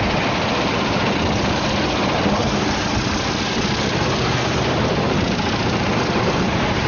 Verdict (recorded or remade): recorded